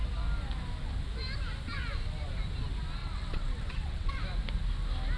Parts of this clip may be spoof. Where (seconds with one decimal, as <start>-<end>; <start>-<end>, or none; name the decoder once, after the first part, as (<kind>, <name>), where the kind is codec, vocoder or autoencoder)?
3.0-4.2 (vocoder, WaveNeXt)

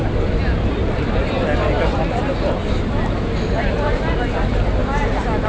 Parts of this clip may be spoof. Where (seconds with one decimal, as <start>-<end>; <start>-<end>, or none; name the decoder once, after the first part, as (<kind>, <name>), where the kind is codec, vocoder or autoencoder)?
none

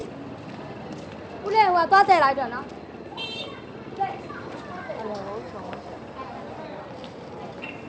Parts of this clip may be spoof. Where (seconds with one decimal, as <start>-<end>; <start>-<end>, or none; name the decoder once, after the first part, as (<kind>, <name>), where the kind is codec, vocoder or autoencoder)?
none

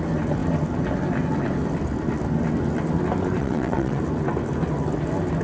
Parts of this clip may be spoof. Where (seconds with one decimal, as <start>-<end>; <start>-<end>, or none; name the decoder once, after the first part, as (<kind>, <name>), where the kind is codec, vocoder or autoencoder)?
3.4-4.0 (vocoder, WaveNeXt)